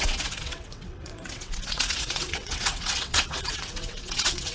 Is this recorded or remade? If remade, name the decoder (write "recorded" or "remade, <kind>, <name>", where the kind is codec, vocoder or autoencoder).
remade, vocoder, WaveNeXt